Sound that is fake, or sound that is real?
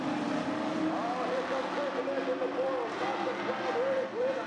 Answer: real